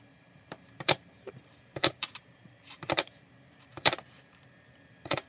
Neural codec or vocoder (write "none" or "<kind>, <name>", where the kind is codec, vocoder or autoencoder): vocoder, BigVGAN v2